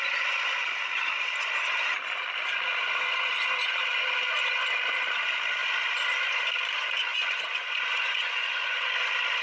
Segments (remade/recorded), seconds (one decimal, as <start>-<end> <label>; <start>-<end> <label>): 0.0-7.1 recorded; 7.1-8.9 remade; 8.9-9.4 recorded